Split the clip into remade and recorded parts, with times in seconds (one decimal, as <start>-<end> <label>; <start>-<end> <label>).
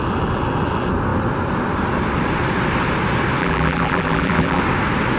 0.0-3.4 recorded; 3.4-4.6 remade; 4.6-5.2 recorded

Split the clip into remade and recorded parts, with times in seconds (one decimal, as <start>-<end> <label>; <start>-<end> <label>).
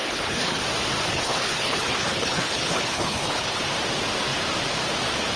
0.0-0.6 remade; 0.6-1.1 recorded; 1.1-3.6 remade; 3.6-5.4 recorded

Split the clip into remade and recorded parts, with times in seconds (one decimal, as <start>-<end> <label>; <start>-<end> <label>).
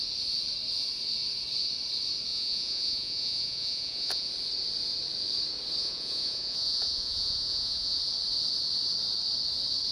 0.0-2.3 recorded; 2.3-4.3 remade; 4.3-5.8 recorded; 5.8-8.0 remade; 8.0-9.9 recorded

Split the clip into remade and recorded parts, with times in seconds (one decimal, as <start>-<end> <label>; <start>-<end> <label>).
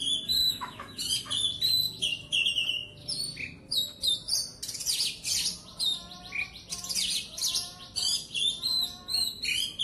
0.0-0.4 recorded; 0.4-1.1 remade; 1.1-9.8 recorded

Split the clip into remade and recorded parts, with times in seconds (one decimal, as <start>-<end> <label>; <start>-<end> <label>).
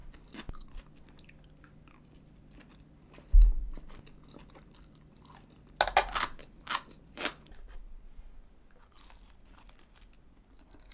0.0-0.9 remade; 0.9-6.4 recorded; 6.4-8.4 remade; 8.4-10.9 recorded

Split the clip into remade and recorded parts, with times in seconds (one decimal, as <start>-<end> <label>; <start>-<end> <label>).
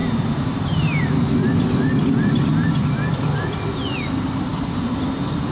0.0-1.0 recorded; 1.0-4.5 remade; 4.5-5.5 recorded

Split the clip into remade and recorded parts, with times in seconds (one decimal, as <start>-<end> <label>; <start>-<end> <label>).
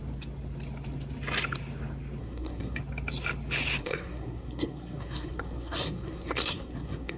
0.0-2.2 recorded; 2.2-2.8 remade; 2.8-3.8 recorded; 3.8-7.2 remade